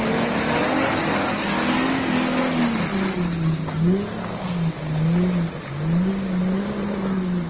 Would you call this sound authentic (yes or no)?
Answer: yes